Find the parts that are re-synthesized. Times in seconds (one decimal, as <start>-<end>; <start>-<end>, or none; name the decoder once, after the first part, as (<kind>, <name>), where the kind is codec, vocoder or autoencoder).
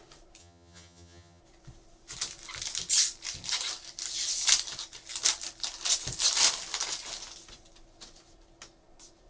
0.4-1.4 (vocoder, HiFi-GAN)